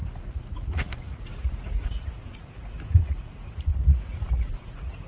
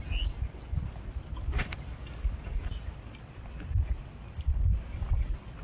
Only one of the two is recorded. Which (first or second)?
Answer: second